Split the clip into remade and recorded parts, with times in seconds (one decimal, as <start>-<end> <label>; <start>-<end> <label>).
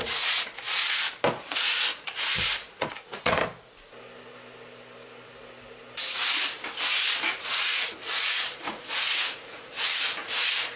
0.0-0.8 remade; 0.8-1.4 recorded; 1.4-3.4 remade; 3.4-7.4 recorded; 7.4-10.8 remade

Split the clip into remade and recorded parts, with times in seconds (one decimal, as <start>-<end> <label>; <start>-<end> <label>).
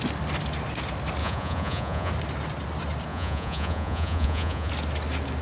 0.0-1.2 recorded; 1.2-2.1 remade; 2.1-3.1 recorded; 3.1-4.7 remade; 4.7-5.4 recorded